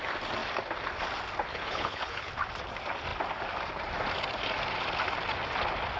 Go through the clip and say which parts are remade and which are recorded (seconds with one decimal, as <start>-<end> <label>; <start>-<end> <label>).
0.0-1.5 recorded; 1.5-2.3 remade; 2.3-6.0 recorded